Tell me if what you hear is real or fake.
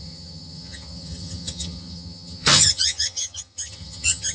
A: fake